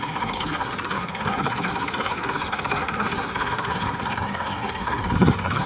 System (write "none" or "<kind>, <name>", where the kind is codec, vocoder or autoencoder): codec, SNAC